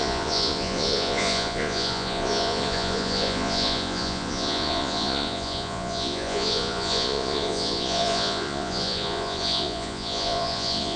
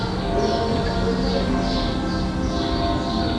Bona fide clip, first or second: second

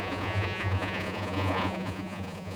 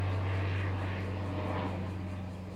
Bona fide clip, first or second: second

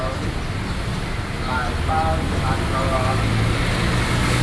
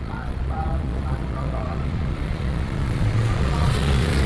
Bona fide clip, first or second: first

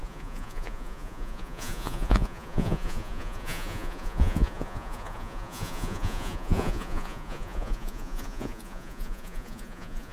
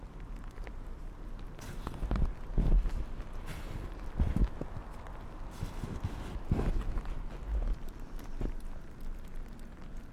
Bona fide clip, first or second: second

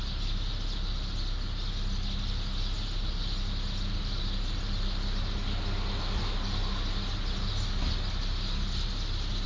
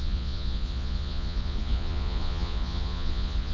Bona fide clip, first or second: first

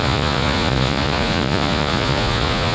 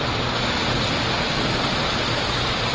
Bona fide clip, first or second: second